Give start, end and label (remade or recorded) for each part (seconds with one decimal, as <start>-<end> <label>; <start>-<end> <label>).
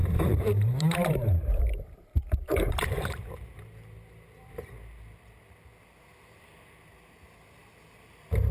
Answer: 0.0-3.6 remade; 3.6-8.5 recorded